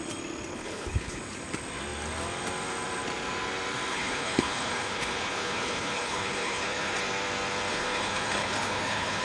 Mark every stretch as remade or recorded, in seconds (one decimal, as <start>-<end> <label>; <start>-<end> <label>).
0.0-0.5 recorded; 0.5-1.2 remade; 1.2-3.9 recorded; 3.9-7.0 remade; 7.0-7.7 recorded; 7.7-9.2 remade